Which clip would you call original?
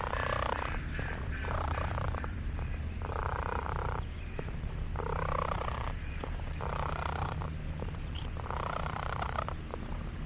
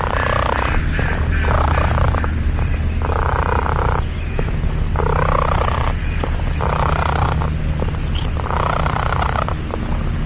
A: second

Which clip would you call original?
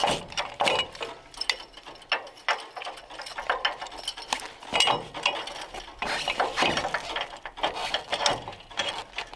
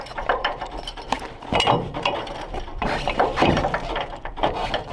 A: first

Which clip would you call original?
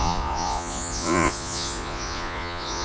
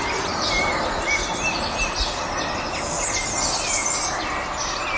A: second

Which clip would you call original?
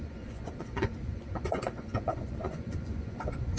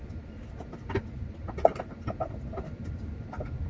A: second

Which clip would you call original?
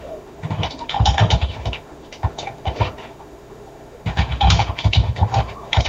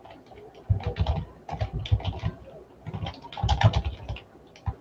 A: second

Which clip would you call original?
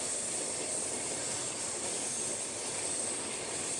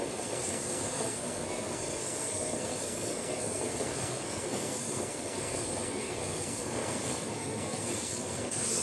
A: first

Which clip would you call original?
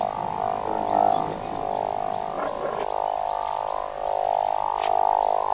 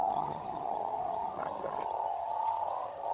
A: first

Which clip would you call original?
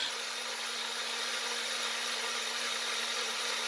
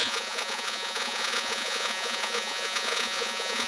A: first